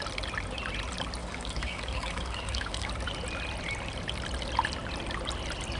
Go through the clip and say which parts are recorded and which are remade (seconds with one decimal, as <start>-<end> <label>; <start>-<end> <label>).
0.0-1.2 recorded; 1.2-2.9 remade; 2.9-5.8 recorded